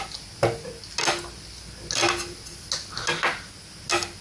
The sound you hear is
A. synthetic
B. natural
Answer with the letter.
B